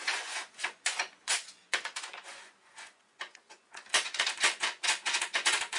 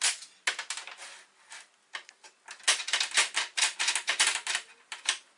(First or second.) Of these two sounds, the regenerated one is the first